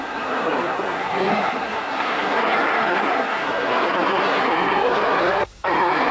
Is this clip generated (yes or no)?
yes